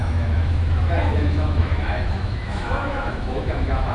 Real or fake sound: fake